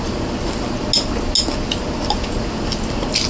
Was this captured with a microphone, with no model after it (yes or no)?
yes